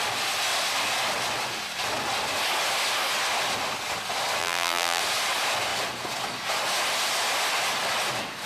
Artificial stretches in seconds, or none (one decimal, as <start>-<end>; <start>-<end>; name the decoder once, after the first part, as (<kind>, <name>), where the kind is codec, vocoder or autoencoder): 4.4-5.0 (vocoder, BigVGAN v2)